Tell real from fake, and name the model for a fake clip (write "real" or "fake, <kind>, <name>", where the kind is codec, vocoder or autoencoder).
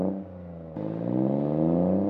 real